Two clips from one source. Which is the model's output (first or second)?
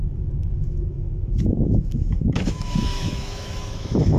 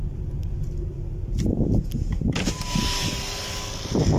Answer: first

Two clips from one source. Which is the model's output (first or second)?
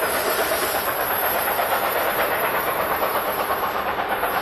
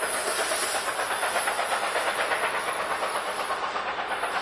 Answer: first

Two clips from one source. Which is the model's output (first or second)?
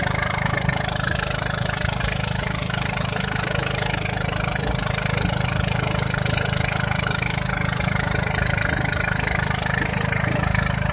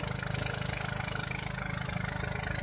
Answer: first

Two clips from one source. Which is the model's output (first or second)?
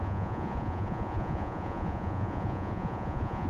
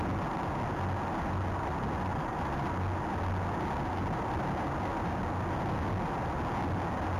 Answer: first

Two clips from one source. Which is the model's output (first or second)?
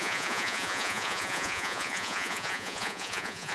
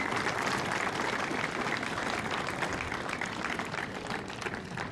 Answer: first